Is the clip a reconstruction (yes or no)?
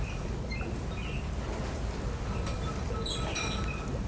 no